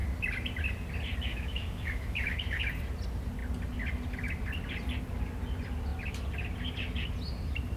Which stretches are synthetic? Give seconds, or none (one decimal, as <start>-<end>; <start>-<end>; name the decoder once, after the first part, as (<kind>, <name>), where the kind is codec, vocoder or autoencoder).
1.3-2.7 (autoencoder, DAC-VAE)